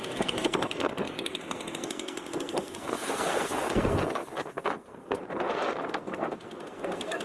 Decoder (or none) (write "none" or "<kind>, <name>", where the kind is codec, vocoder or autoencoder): codec, SNAC